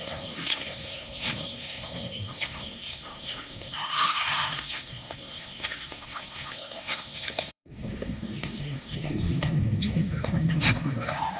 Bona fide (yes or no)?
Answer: no